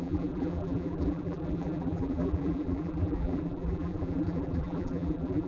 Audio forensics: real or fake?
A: fake